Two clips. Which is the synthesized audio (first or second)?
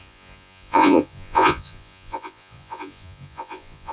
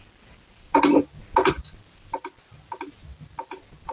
first